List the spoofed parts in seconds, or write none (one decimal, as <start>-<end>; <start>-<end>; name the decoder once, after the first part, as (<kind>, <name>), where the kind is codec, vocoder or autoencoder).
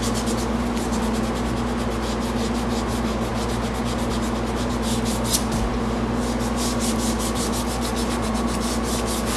none